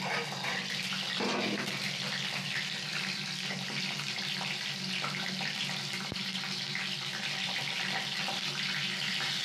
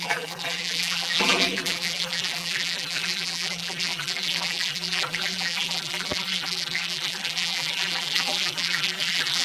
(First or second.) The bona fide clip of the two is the first